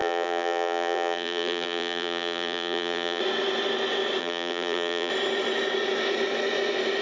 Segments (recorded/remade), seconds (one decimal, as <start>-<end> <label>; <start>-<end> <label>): 0.0-3.2 remade; 3.2-4.2 recorded; 4.2-5.1 remade; 5.1-7.0 recorded